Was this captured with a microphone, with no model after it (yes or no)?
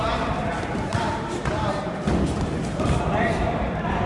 no